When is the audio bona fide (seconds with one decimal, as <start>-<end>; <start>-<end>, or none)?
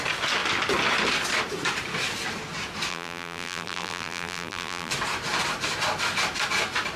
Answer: 0.0-2.9; 4.9-7.0